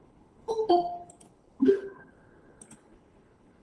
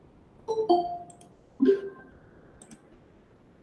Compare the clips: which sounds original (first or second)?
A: second